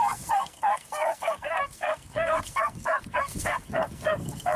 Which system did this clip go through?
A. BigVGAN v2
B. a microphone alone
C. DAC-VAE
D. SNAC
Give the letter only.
D